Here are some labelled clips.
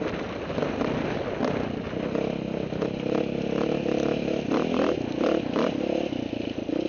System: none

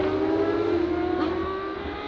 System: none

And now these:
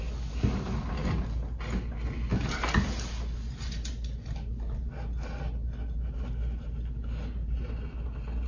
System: none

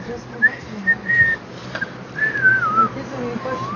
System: none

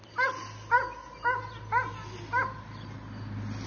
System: none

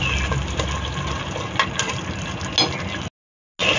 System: none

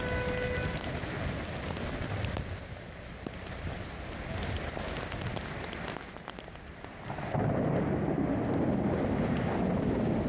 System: none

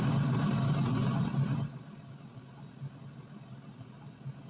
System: none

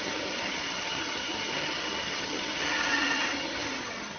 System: vocoder, HiFi-GAN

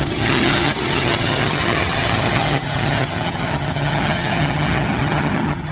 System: vocoder, HiFi-GAN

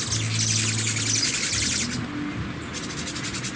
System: none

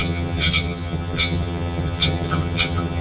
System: vocoder, HiFi-GAN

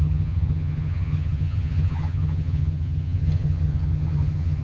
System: vocoder, HiFi-GAN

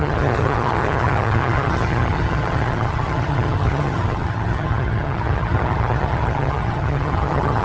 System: vocoder, HiFi-GAN